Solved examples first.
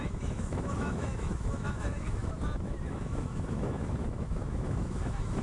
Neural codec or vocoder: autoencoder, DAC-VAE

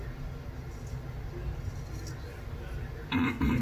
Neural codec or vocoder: none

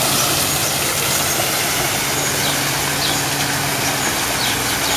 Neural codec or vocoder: none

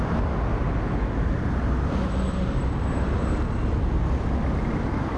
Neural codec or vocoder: none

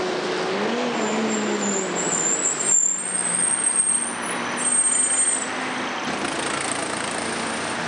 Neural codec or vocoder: none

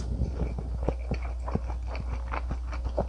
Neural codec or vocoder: none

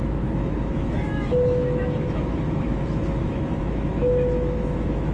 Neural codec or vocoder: autoencoder, DAC-VAE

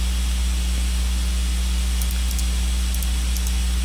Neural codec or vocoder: none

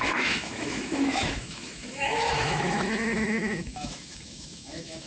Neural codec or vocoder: autoencoder, DAC-VAE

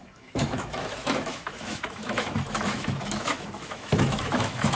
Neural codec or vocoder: autoencoder, DAC-VAE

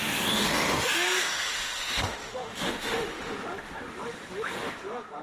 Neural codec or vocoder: autoencoder, DAC-VAE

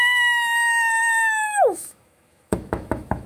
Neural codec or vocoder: autoencoder, DAC-VAE